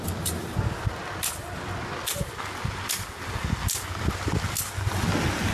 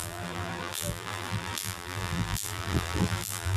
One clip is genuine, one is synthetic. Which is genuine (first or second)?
first